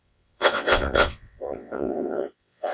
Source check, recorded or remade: remade